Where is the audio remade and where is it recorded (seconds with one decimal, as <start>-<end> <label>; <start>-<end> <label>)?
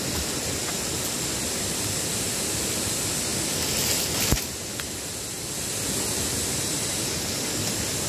0.0-3.3 remade; 3.3-8.1 recorded